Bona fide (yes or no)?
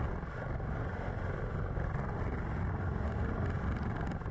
yes